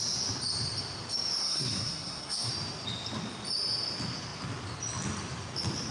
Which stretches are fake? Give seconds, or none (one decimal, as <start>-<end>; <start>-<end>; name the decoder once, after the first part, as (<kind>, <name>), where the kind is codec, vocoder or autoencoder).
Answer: 1.4-2.5 (codec, SNAC)